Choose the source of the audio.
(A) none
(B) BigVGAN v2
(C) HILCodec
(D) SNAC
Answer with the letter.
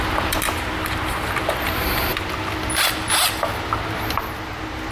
A